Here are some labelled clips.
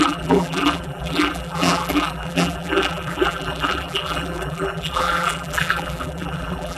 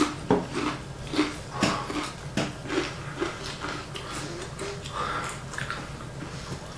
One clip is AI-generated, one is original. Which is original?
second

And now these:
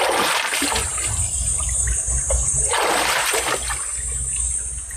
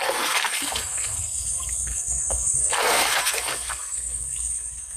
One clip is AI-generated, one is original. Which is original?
first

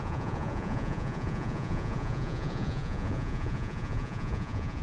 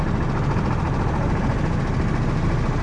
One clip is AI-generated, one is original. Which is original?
second